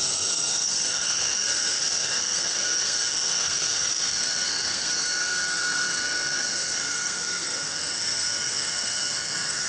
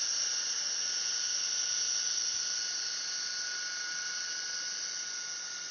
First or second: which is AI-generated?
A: first